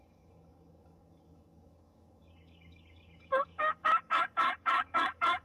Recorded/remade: remade